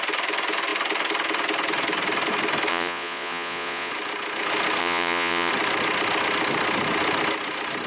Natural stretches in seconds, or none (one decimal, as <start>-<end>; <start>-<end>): 0.0-2.7; 3.9-4.8; 5.5-7.9